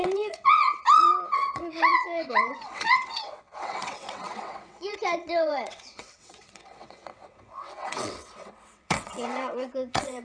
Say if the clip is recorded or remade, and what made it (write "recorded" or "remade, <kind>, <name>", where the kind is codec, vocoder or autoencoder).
remade, vocoder, WaveNeXt